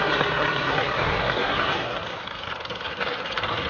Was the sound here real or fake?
fake